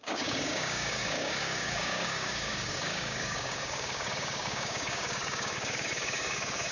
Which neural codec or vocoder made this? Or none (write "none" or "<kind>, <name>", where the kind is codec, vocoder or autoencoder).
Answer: codec, DAC